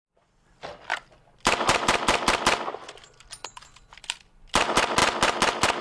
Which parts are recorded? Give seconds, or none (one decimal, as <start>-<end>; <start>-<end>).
0.0-0.9; 3.6-5.8